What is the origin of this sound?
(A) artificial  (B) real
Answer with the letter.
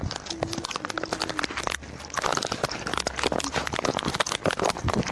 B